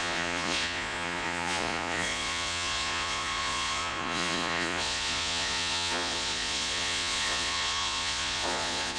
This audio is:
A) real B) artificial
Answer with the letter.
B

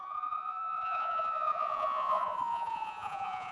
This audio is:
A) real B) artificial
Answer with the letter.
B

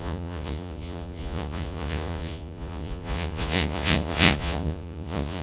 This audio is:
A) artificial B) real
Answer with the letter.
A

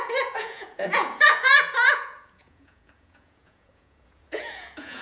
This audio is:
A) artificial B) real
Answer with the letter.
A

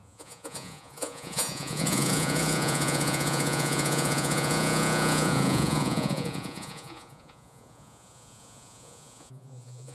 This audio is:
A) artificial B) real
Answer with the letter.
A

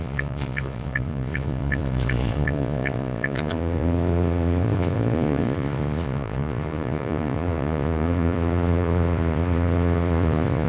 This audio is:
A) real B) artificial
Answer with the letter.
B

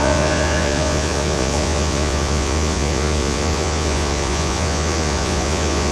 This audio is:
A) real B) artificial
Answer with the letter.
B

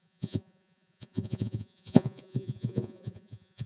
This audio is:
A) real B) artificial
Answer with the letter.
B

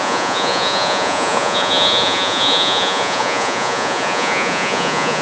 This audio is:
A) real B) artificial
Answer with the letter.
B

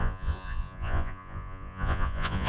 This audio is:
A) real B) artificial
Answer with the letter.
B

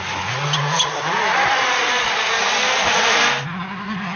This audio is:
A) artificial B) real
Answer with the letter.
B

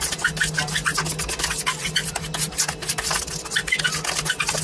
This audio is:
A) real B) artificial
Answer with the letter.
A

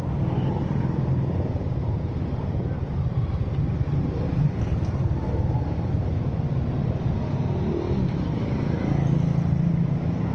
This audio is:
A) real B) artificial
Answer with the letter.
A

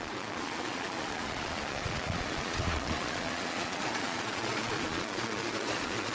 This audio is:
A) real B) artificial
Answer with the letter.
B